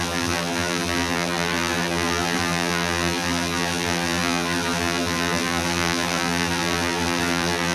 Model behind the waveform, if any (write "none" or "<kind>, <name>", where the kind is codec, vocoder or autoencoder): vocoder, BigVGAN v2